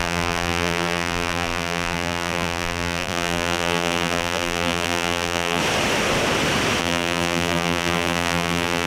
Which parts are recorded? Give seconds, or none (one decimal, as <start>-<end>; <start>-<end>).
5.6-6.8